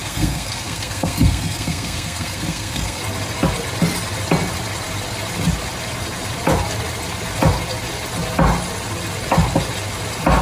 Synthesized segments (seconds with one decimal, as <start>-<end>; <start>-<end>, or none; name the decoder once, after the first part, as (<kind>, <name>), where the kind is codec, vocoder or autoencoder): 0.0-3.0 (codec, SNAC)